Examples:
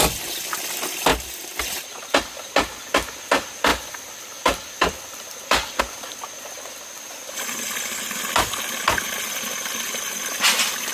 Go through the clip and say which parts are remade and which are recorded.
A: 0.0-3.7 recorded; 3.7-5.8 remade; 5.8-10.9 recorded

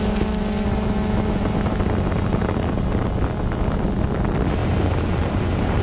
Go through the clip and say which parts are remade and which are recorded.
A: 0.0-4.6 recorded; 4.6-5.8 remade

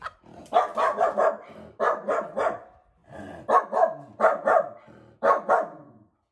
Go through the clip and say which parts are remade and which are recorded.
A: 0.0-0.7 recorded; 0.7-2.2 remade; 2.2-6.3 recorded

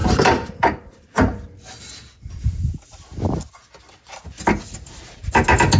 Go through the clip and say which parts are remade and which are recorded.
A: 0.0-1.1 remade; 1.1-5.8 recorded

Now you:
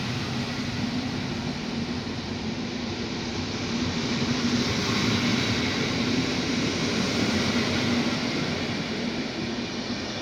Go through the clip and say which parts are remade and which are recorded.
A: 0.0-5.3 recorded; 5.3-7.1 remade; 7.1-10.2 recorded

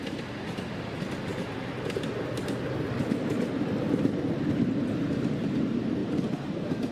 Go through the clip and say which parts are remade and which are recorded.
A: 0.0-6.0 recorded; 6.0-6.9 remade